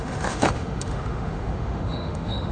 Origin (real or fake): fake